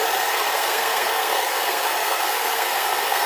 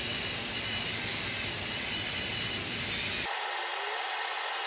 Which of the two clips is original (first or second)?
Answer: second